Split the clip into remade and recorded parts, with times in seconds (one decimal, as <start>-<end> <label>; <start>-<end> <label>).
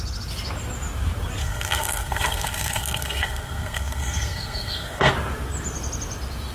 0.0-1.4 recorded; 1.4-5.1 remade; 5.1-6.5 recorded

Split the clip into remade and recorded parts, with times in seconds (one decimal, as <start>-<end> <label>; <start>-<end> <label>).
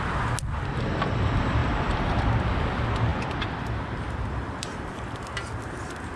0.0-6.2 recorded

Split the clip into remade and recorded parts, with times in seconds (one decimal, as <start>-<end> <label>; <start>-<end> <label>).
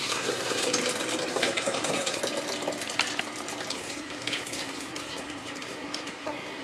0.0-0.7 remade; 0.7-1.3 recorded; 1.3-2.2 remade; 2.2-3.7 recorded; 3.7-6.6 remade